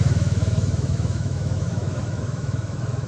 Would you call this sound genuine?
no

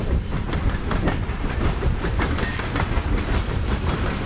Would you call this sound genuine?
no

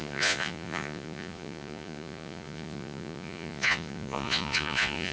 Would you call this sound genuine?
no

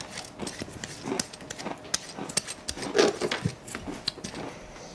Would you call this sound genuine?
yes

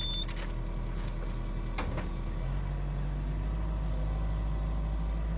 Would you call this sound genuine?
yes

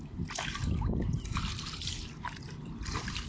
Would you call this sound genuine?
yes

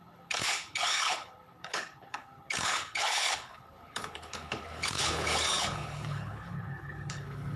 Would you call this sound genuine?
no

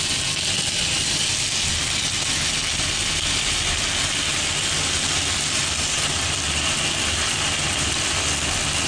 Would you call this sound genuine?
yes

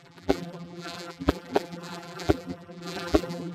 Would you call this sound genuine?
no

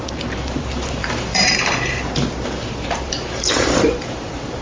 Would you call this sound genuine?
no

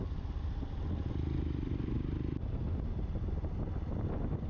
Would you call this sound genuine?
yes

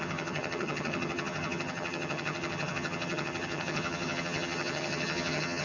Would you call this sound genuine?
no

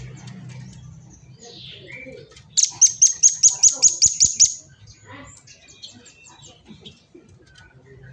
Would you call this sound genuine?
yes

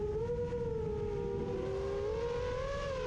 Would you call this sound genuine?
yes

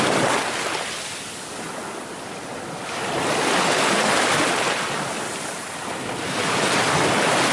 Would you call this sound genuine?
yes